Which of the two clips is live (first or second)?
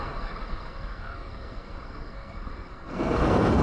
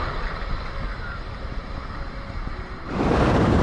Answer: second